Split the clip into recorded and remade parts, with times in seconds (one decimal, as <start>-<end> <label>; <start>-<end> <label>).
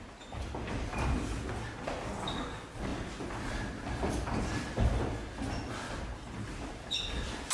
0.0-7.5 recorded